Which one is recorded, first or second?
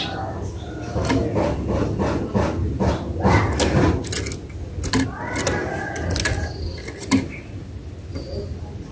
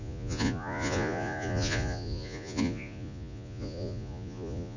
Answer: first